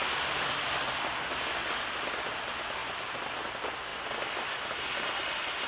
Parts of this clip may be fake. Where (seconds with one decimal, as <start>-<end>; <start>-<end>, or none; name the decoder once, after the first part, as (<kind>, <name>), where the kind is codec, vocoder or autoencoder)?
none